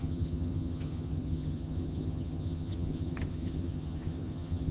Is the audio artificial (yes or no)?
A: yes